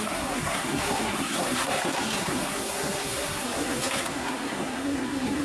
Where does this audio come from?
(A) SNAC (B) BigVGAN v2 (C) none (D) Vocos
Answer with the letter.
A